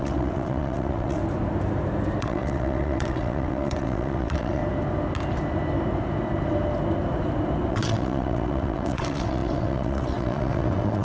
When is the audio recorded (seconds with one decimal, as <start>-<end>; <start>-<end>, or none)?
1.2-2.2; 4.6-7.7